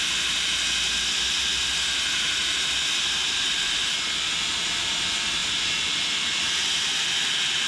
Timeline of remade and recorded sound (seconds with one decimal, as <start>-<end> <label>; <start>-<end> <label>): 0.0-7.7 recorded